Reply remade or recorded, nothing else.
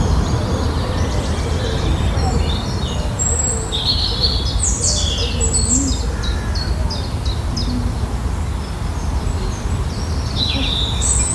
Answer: recorded